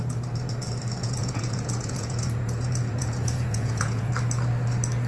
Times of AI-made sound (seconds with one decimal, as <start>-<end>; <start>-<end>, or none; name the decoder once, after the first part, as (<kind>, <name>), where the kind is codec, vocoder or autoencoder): 1.0-4.1 (vocoder, Vocos)